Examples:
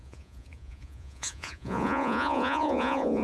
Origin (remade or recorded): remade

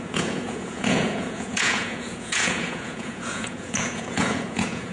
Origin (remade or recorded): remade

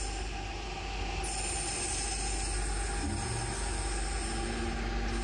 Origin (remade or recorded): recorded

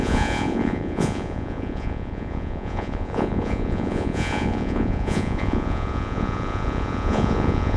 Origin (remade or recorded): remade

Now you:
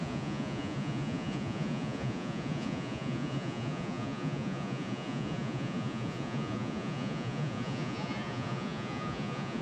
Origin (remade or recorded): remade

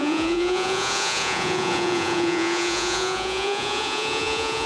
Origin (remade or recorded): remade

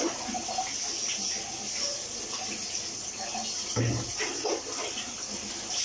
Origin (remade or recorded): recorded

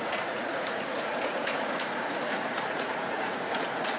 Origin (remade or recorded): remade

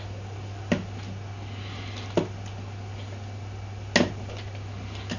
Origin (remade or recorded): recorded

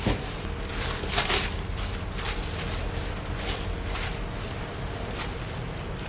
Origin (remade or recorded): recorded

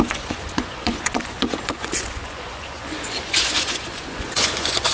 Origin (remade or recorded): remade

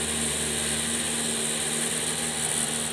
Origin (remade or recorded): recorded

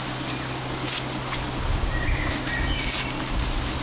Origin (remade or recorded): recorded